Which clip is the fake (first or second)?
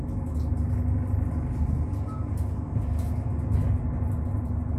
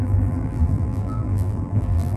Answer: second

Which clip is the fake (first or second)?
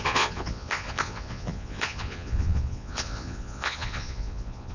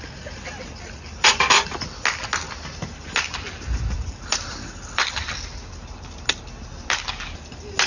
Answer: first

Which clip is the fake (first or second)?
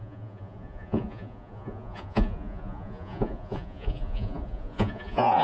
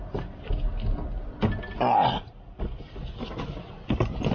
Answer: first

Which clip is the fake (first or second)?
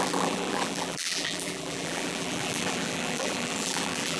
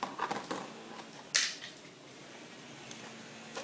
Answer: first